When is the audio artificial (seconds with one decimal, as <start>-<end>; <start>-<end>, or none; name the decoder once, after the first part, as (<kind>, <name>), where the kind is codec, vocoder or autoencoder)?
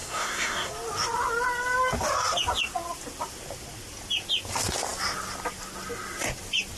0.0-0.7 (codec, SNAC)